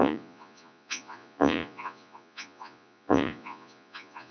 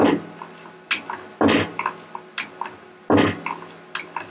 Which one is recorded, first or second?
second